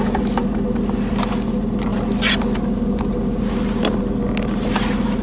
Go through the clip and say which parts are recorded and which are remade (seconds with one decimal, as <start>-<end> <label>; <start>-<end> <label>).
0.0-5.2 recorded